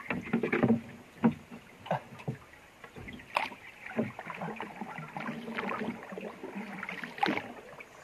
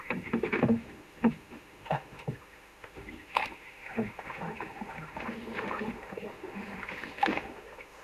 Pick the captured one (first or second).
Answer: first